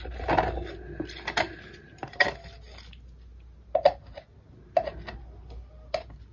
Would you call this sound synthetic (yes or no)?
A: no